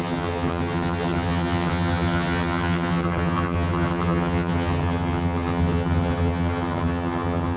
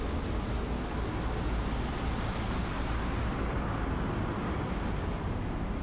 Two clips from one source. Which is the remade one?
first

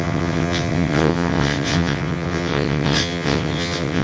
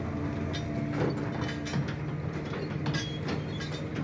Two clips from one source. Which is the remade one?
first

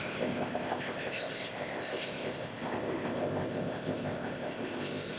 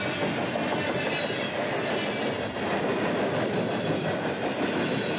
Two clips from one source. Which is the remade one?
first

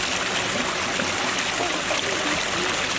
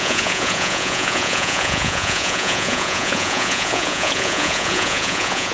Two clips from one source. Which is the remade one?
second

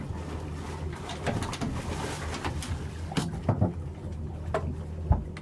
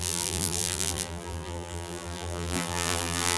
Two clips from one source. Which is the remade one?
second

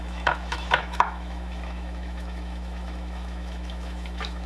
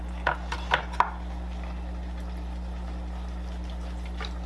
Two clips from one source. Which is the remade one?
first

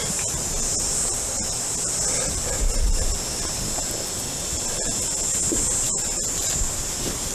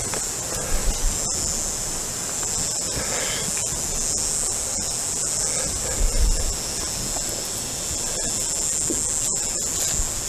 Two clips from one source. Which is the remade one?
first